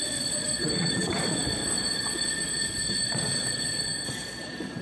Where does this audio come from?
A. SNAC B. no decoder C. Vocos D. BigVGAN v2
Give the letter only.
C